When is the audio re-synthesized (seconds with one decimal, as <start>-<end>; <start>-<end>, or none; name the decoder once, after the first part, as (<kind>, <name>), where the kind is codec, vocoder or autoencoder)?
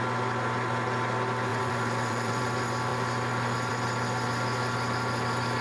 1.5-2.4 (vocoder, Vocos)